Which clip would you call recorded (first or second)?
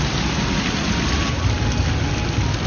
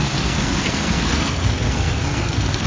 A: first